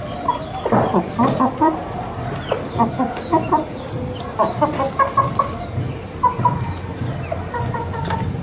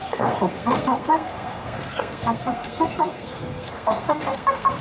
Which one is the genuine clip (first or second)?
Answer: first